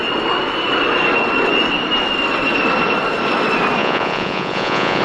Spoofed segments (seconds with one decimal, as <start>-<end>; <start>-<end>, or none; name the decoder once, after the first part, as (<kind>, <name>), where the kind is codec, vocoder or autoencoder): 3.8-5.0 (vocoder, Vocos)